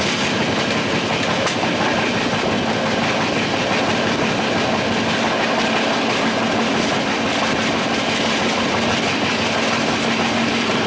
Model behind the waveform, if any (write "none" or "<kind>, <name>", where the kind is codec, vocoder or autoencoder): none